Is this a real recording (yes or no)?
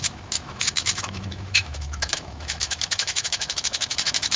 no